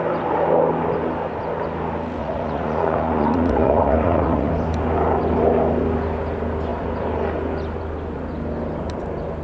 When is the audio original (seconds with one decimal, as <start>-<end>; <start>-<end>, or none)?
0.0-2.2; 4.5-9.4